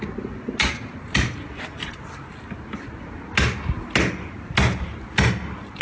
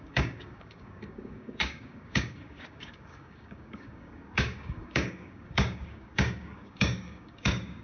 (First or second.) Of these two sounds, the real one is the first